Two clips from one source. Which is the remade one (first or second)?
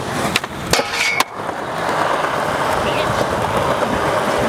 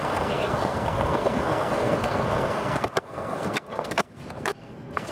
second